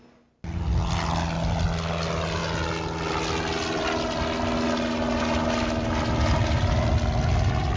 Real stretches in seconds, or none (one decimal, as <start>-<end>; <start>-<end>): 0.0-7.8